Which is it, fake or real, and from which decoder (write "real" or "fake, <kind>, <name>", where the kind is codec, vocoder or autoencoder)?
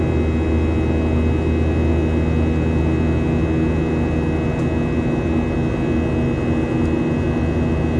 real